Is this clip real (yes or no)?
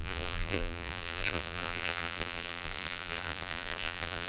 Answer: no